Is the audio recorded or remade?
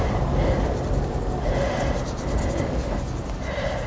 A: recorded